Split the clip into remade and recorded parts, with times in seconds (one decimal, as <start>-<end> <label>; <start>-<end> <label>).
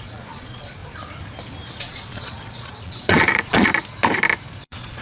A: 0.0-0.8 remade; 0.8-1.8 recorded; 1.8-3.7 remade; 3.7-4.6 recorded; 4.6-5.0 remade